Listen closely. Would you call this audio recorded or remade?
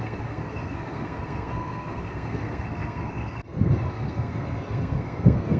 remade